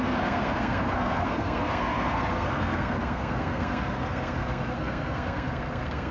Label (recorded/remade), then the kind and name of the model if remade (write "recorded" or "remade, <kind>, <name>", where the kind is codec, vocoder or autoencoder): remade, codec, SNAC